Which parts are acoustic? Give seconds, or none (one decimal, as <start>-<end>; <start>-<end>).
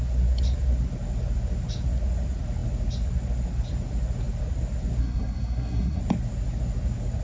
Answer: 0.0-5.0; 6.0-7.2